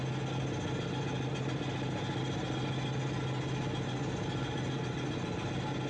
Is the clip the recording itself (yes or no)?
yes